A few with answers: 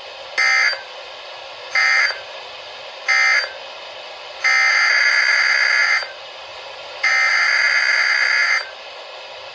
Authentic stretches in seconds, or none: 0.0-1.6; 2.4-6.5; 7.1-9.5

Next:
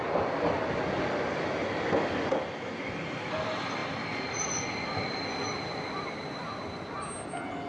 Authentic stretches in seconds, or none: 0.0-7.7

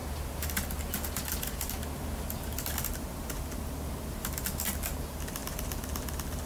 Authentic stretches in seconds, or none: 0.0-6.5